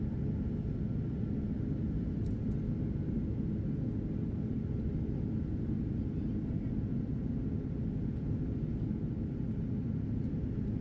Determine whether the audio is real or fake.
real